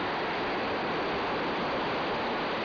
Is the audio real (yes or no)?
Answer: yes